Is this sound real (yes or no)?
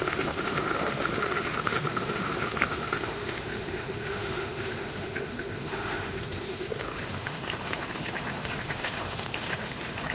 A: no